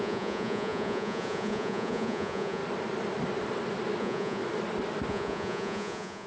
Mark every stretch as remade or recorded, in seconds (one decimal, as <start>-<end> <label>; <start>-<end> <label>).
0.0-2.6 remade; 2.6-4.0 recorded; 4.0-4.4 remade; 4.4-5.1 recorded; 5.1-6.3 remade